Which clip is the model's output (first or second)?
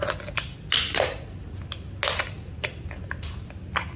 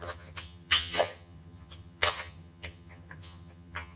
second